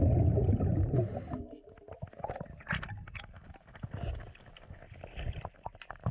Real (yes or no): yes